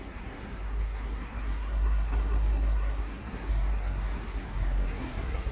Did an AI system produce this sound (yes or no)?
yes